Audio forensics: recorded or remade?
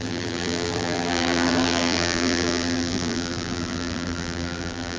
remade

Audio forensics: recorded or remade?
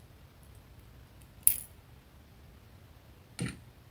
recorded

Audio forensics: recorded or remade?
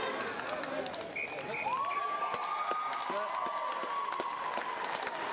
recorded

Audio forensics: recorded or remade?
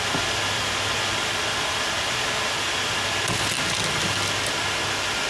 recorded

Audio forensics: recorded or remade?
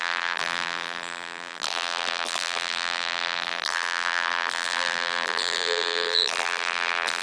remade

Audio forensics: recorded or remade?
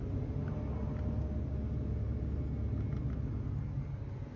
recorded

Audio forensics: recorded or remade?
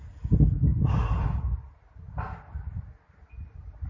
recorded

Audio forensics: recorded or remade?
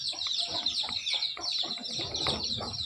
remade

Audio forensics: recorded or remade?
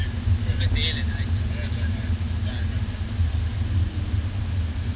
recorded